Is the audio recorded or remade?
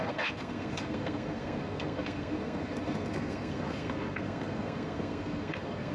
remade